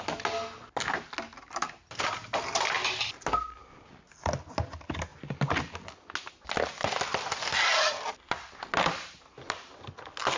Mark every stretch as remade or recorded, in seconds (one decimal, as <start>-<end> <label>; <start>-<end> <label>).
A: 0.0-10.4 recorded

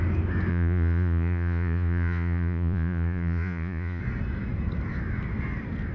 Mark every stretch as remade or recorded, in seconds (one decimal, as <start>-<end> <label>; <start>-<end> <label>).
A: 0.0-0.5 recorded; 0.5-4.0 remade; 4.0-5.9 recorded

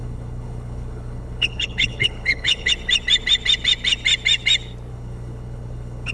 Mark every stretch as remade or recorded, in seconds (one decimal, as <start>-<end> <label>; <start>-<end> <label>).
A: 0.0-2.7 remade; 2.7-4.9 recorded; 4.9-6.1 remade

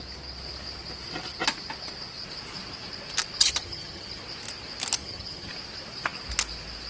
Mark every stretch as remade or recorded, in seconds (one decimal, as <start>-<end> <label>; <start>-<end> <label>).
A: 0.0-3.4 recorded; 3.4-4.2 remade; 4.2-5.0 recorded; 5.0-5.5 remade; 5.5-6.9 recorded

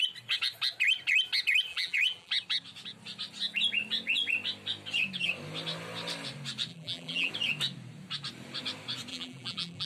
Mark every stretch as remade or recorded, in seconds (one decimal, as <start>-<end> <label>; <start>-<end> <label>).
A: 0.0-1.7 recorded; 1.7-2.3 remade; 2.3-6.7 recorded; 6.7-7.3 remade; 7.3-9.1 recorded; 9.1-9.9 remade